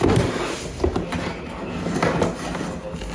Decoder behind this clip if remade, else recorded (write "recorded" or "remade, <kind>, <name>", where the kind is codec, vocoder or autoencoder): recorded